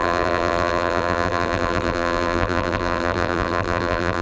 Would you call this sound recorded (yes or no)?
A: no